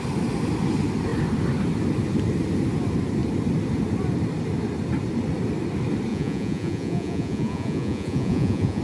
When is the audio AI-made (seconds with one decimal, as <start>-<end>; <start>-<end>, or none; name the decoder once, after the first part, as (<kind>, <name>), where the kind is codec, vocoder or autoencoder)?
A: 6.1-8.8 (vocoder, Vocos)